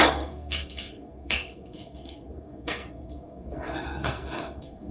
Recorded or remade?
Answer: remade